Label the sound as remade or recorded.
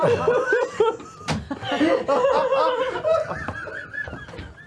recorded